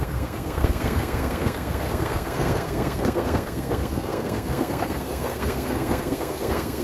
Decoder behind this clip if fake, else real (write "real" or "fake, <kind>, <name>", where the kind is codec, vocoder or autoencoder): fake, codec, SNAC